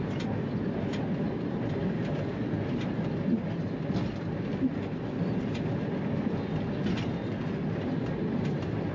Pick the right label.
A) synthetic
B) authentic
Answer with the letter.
B